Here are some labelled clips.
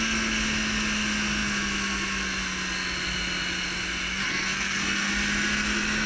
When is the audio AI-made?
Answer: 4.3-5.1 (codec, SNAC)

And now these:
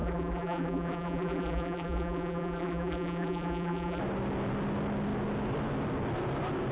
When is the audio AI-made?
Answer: 0.0-4.0 (vocoder, BigVGAN v2)

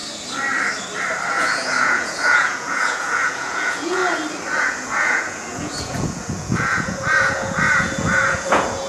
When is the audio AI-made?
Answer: 1.3-4.0 (vocoder, Vocos); 4.6-8.9

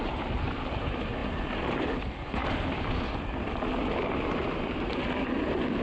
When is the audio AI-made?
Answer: none

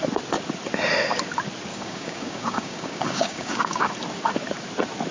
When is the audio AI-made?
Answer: 1.7-3.9 (codec, DAC)